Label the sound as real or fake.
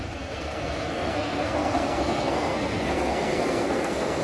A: fake